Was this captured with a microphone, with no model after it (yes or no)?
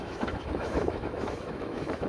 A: no